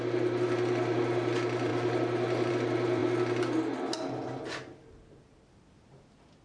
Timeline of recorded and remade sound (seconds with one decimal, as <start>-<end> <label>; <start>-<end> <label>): 0.0-6.4 recorded